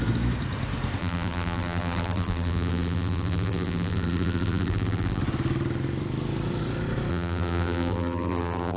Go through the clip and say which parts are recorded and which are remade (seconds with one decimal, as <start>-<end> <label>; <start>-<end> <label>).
0.0-1.0 recorded; 1.0-5.2 remade; 5.2-7.1 recorded; 7.1-8.8 remade